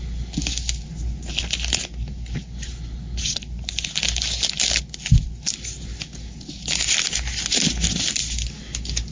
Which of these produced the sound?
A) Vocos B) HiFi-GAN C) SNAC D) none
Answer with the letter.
D